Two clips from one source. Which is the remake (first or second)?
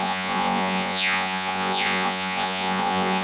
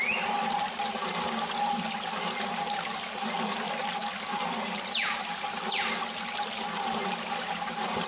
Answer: first